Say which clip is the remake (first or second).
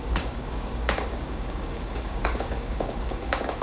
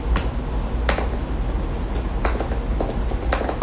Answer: first